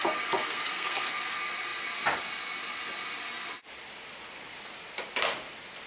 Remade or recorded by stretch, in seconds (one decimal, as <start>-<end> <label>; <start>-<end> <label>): 0.0-0.4 recorded; 0.4-1.1 remade; 1.1-5.9 recorded